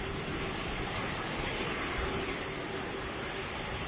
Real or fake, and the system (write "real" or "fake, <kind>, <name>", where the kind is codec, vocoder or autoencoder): real